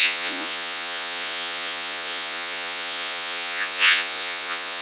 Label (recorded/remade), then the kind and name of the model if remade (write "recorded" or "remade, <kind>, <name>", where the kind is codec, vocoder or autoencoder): remade, vocoder, Vocos